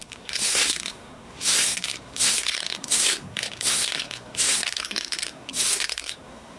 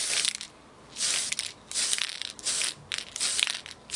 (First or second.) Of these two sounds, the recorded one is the second